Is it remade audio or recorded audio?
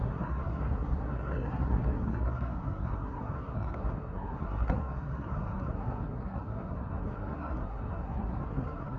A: remade